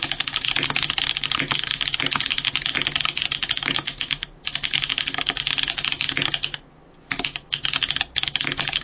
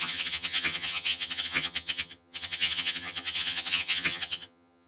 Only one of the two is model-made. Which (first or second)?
second